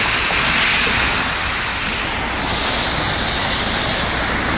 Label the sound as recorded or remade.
recorded